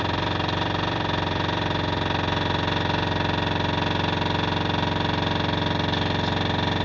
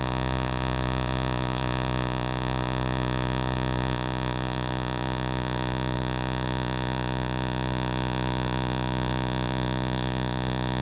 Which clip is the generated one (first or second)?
second